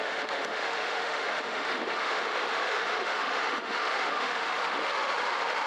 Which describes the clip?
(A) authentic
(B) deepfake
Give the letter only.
B